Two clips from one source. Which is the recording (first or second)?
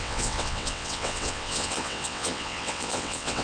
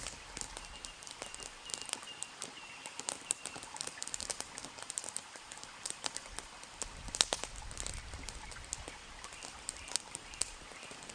second